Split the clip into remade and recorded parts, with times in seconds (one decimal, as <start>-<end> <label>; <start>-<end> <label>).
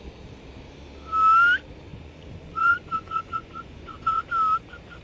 0.0-1.9 recorded; 1.9-4.2 remade; 4.2-5.0 recorded